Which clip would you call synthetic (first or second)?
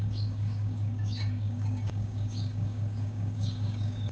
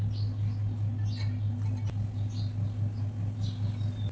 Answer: first